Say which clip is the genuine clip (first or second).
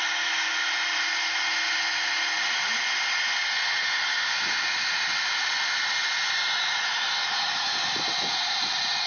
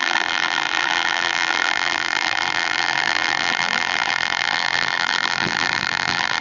first